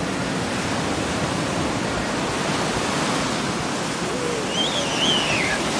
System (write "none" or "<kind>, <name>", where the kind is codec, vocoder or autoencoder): none